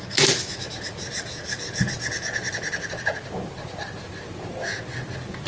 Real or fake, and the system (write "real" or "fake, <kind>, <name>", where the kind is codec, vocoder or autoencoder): real